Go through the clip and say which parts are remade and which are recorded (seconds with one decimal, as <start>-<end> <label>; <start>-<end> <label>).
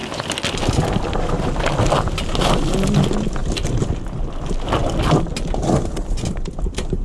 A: 0.0-7.0 recorded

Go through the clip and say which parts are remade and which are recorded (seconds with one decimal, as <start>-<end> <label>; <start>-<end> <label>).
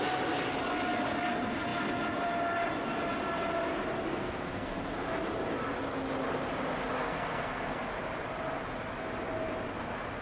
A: 0.0-4.1 recorded; 4.1-4.8 remade; 4.8-7.0 recorded; 7.0-7.8 remade; 7.8-10.2 recorded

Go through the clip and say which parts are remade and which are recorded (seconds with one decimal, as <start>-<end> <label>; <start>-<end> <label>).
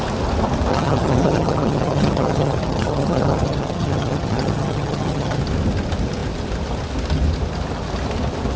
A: 0.0-0.7 recorded; 0.7-5.4 remade; 5.4-8.6 recorded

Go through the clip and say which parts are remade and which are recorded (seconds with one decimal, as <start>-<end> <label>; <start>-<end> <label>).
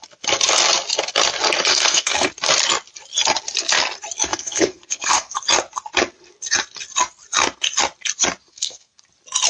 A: 0.0-1.7 recorded; 1.7-2.3 remade; 2.3-4.3 recorded; 4.3-5.3 remade; 5.3-8.5 recorded; 8.5-9.0 remade; 9.0-9.5 recorded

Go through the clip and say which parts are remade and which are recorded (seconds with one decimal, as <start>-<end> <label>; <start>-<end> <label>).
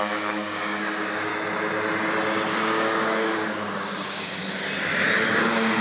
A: 0.0-1.3 remade; 1.3-2.5 recorded; 2.5-4.4 remade; 4.4-5.8 recorded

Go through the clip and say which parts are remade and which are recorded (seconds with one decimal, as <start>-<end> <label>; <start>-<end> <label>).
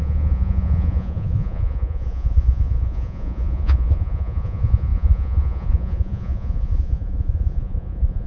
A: 0.0-8.3 remade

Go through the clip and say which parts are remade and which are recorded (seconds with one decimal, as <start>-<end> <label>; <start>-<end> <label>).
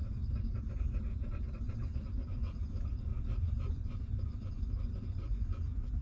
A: 0.0-2.1 recorded; 2.1-3.1 remade; 3.1-3.7 recorded; 3.7-6.0 remade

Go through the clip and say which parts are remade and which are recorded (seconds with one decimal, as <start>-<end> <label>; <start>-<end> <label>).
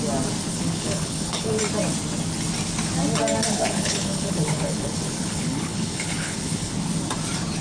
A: 0.0-0.5 recorded; 0.5-1.6 remade; 1.6-3.5 recorded; 3.5-6.7 remade; 6.7-7.6 recorded